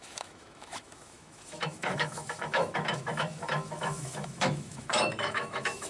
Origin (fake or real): fake